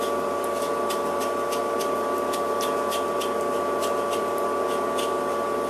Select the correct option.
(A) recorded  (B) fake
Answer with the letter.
A